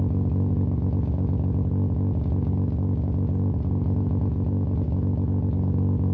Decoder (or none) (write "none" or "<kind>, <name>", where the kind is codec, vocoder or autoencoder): none